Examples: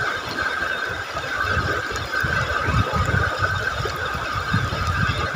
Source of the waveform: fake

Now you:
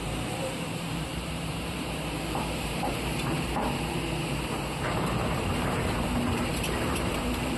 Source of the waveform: fake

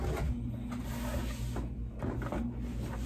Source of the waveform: real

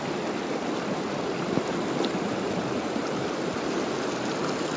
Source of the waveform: real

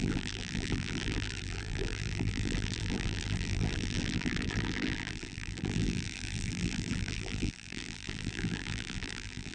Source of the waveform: fake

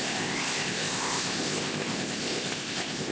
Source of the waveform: fake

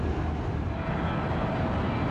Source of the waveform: real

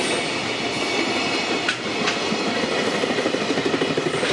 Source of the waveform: real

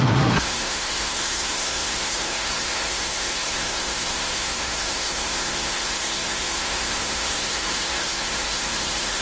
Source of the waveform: fake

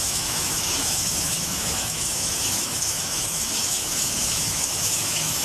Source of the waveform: fake